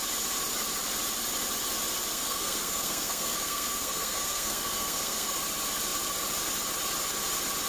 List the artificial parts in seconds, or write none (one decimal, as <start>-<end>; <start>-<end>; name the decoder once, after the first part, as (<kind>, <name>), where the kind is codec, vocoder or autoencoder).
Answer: 2.1-5.4 (codec, SNAC)